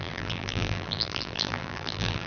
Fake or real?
fake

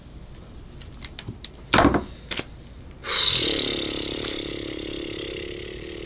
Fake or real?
real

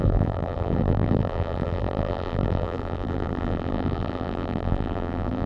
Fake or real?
fake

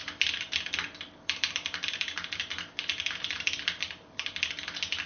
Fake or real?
fake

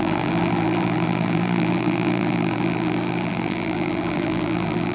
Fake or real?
fake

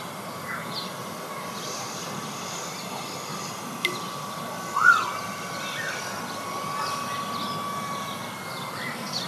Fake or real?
real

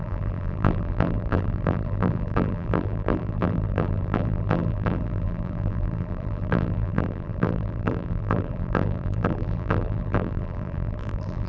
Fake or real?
fake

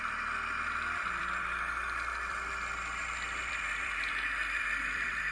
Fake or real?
fake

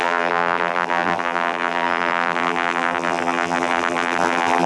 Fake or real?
fake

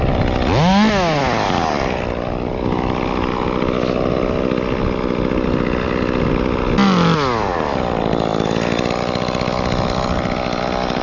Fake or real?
real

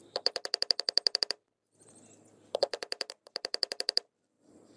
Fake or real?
fake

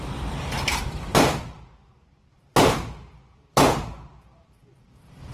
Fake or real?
fake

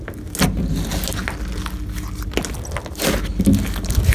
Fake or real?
real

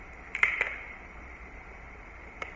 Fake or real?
fake